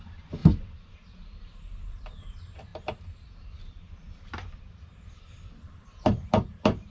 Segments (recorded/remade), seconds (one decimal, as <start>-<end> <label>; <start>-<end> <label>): 0.0-6.9 remade